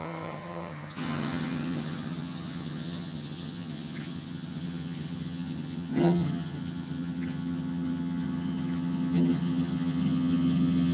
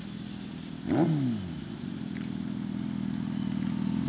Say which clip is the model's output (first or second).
first